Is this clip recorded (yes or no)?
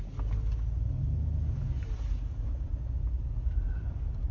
yes